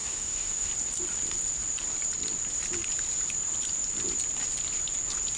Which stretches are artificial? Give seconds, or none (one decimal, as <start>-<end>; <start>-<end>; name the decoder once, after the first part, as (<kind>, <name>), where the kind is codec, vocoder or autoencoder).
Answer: 0.0-0.7 (autoencoder, DAC-VAE)